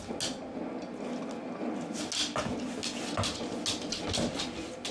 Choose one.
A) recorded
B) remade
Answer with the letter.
A